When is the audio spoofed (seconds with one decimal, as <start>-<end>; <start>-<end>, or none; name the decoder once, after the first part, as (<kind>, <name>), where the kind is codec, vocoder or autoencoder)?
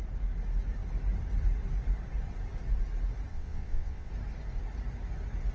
3.3-4.1 (vocoder, WaveNeXt)